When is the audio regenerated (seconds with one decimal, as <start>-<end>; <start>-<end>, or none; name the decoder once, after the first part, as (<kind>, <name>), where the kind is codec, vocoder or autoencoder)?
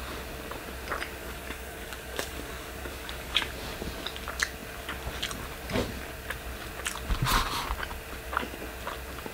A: 1.2-3.5 (codec, DAC)